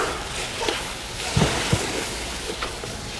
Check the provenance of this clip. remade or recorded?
remade